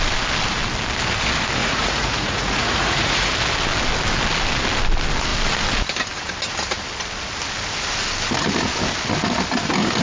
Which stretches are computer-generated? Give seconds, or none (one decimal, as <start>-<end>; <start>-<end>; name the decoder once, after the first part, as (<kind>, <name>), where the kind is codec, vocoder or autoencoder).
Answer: 1.6-3.3 (vocoder, Vocos)